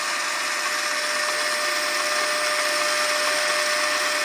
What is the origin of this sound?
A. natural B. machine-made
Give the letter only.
A